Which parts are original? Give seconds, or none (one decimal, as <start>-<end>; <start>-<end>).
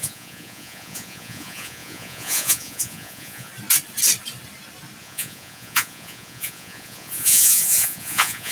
3.5-5.0